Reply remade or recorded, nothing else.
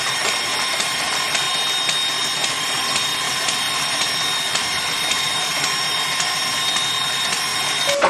recorded